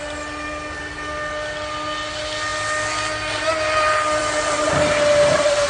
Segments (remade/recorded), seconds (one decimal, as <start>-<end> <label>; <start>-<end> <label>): 0.0-5.7 recorded

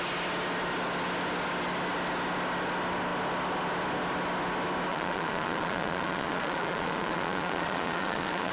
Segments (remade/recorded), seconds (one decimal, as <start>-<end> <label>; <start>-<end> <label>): 0.0-4.9 recorded; 4.9-8.5 remade

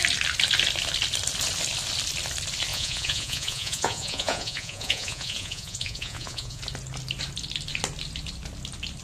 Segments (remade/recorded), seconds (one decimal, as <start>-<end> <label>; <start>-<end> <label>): 0.0-2.7 recorded; 2.7-6.6 remade; 6.6-9.0 recorded

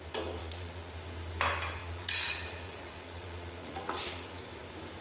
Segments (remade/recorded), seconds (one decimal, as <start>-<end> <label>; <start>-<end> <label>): 0.0-0.4 recorded; 0.4-0.9 remade; 0.9-1.8 recorded; 1.8-4.4 remade; 4.4-5.0 recorded

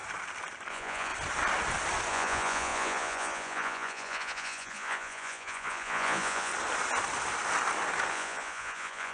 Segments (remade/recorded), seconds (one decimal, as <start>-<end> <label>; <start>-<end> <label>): 0.0-0.7 recorded; 0.7-1.1 remade; 1.1-2.1 recorded; 2.1-6.5 remade; 6.5-8.1 recorded; 8.1-9.1 remade

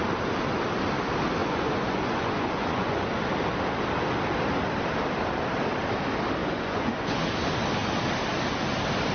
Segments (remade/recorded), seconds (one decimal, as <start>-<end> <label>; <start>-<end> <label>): 0.0-1.4 recorded; 1.4-3.1 remade; 3.1-6.4 recorded; 6.4-7.2 remade; 7.2-9.1 recorded

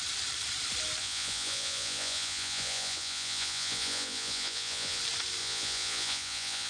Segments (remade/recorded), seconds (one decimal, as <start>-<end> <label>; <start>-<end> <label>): 0.0-1.0 recorded; 1.0-5.0 remade; 5.0-5.4 recorded; 5.4-6.7 remade

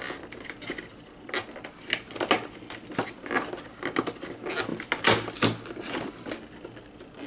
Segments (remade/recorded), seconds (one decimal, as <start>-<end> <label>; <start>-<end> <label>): 0.0-7.3 recorded